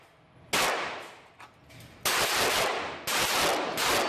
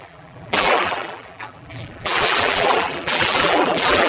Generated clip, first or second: second